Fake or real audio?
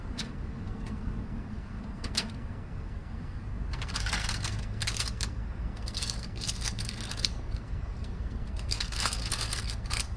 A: fake